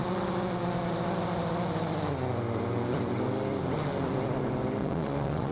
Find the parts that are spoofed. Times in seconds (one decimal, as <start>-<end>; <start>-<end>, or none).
4.8-5.5